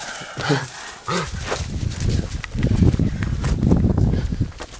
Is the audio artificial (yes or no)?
no